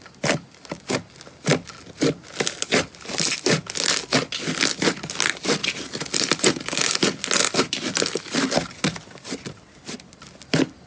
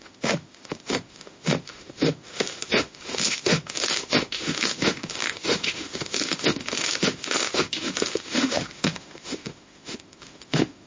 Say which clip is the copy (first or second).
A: second